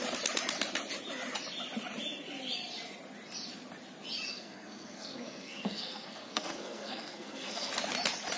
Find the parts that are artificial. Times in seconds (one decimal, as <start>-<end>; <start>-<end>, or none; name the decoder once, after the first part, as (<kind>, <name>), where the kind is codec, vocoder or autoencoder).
4.3-7.7 (codec, SNAC)